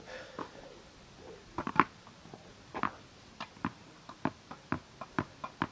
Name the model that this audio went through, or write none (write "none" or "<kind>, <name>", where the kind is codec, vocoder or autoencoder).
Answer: none